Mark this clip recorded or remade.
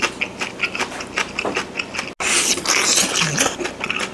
recorded